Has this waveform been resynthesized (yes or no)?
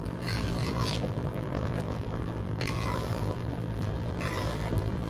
yes